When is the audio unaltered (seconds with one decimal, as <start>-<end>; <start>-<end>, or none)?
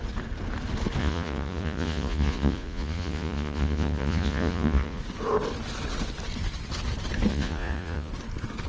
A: 0.0-1.0; 5.0-7.3; 8.1-8.7